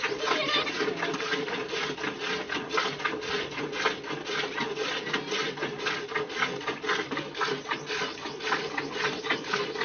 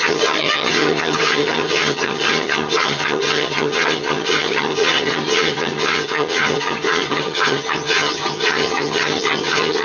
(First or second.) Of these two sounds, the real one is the first